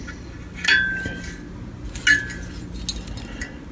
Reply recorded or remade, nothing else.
recorded